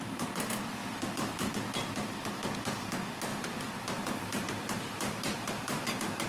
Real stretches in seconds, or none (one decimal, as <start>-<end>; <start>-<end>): 0.0-0.8; 1.5-3.3